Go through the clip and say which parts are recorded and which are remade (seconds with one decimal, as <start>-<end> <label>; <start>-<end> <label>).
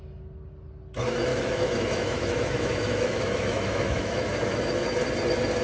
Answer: 0.0-1.3 recorded; 1.3-4.7 remade; 4.7-5.6 recorded